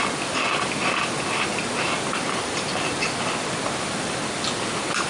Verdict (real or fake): real